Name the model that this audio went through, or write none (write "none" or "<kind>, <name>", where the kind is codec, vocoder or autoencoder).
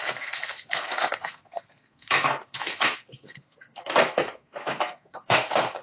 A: codec, SNAC